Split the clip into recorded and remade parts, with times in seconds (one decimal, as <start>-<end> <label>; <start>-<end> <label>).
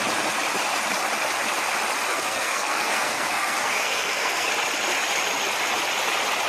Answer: 0.0-2.1 recorded; 2.1-4.5 remade; 4.5-6.5 recorded